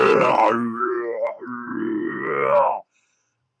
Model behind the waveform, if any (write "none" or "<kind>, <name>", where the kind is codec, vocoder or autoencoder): vocoder, Vocos